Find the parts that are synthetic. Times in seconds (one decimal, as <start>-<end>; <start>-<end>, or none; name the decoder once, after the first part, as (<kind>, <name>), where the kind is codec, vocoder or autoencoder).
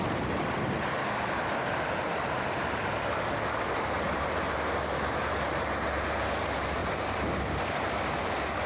none